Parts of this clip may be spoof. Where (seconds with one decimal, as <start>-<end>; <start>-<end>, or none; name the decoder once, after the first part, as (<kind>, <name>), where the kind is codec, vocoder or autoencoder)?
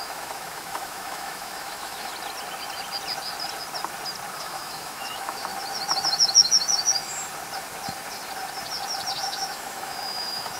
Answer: 0.0-2.1 (autoencoder, DAC-VAE); 4.4-5.5; 9.1-10.6